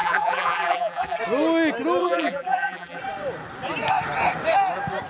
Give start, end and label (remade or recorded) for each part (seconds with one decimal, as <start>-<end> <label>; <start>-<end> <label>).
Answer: 0.0-1.2 remade; 1.2-2.0 recorded; 2.0-3.0 remade; 3.0-5.1 recorded